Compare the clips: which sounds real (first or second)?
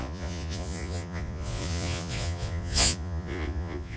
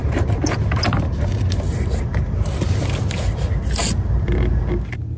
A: second